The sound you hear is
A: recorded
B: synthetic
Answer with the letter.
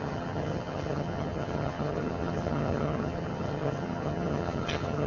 B